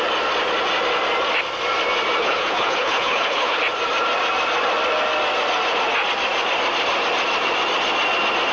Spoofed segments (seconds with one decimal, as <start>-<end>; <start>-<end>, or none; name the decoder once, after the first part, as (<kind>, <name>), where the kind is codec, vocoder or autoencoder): 2.2-3.6 (codec, HILCodec)